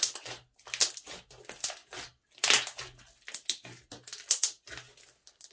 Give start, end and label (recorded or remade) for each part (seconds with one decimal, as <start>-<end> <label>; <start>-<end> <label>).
0.0-5.5 recorded